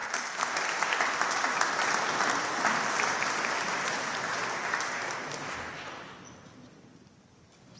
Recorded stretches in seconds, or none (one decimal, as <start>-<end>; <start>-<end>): 0.0-7.8